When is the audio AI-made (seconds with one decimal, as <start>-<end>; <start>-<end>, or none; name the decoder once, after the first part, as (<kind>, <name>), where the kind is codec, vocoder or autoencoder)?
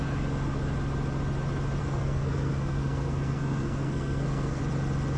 1.8-4.6 (codec, SNAC)